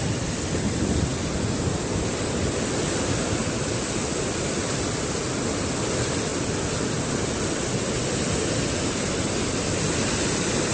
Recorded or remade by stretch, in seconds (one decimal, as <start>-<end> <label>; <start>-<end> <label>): 0.0-1.1 remade; 1.1-2.0 recorded; 2.0-6.3 remade; 6.3-9.5 recorded; 9.5-10.7 remade